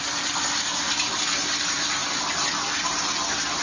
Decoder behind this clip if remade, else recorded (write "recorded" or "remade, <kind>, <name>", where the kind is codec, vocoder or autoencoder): recorded